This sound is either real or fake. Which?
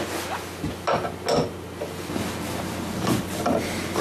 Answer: real